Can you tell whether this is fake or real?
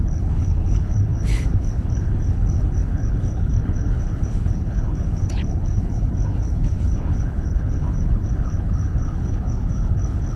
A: fake